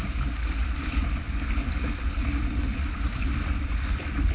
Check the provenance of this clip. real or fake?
real